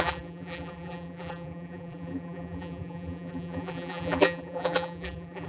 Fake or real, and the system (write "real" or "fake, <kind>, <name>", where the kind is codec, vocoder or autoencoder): fake, vocoder, BigVGAN v2